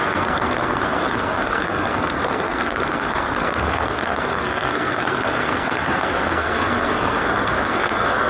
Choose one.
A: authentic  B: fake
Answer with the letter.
B